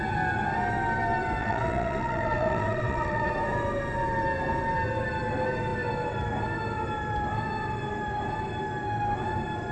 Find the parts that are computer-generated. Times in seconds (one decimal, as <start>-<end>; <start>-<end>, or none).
1.4-3.3